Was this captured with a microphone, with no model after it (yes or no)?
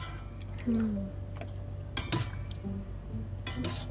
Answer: yes